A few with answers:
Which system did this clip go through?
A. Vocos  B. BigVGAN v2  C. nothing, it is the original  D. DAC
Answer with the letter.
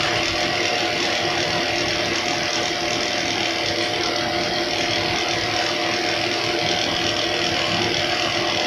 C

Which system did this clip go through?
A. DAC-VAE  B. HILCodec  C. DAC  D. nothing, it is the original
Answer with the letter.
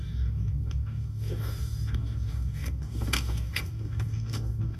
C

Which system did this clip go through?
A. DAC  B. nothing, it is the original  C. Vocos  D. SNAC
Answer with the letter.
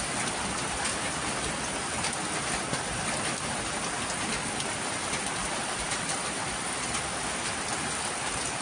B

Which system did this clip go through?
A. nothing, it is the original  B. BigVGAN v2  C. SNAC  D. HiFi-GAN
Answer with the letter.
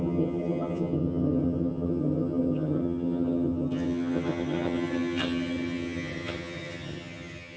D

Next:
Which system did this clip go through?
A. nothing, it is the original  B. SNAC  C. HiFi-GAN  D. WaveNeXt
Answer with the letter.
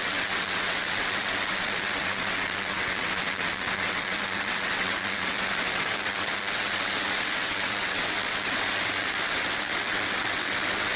D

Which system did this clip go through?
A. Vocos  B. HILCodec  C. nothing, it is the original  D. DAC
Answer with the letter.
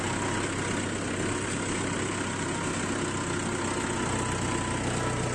C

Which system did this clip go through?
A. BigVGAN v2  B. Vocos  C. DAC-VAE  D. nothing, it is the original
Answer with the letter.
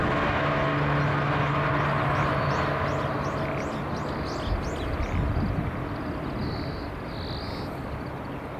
D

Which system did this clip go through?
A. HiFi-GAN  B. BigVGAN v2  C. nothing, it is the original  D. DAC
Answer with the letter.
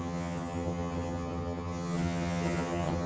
A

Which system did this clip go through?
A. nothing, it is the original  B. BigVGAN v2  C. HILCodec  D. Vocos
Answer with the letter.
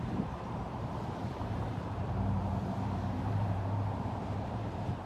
B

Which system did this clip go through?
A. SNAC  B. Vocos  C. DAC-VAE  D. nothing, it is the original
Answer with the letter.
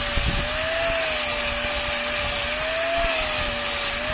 D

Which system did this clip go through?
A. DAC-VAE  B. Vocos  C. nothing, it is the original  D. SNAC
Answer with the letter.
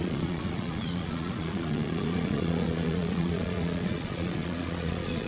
B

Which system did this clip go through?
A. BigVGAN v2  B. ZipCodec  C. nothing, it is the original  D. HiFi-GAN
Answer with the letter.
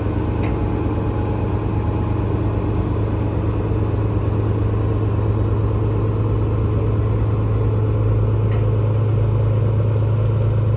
C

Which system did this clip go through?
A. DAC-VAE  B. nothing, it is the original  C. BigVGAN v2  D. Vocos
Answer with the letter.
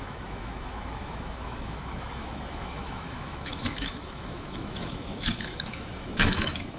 A